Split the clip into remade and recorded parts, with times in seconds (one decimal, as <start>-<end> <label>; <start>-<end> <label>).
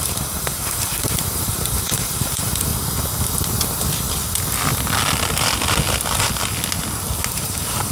0.0-2.7 remade; 2.7-7.3 recorded; 7.3-7.9 remade